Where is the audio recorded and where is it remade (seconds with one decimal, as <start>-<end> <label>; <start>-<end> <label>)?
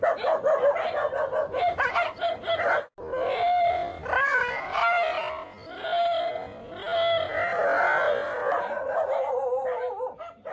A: 0.0-10.5 recorded